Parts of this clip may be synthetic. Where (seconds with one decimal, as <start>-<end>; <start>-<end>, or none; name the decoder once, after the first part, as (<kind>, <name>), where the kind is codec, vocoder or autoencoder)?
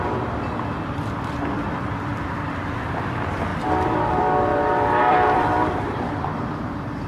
0.0-4.5 (vocoder, BigVGAN v2); 5.1-7.1